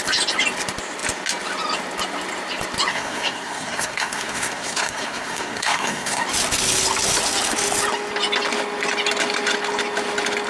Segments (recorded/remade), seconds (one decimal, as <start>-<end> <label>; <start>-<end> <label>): 0.0-2.9 recorded; 2.9-6.2 remade; 6.2-10.5 recorded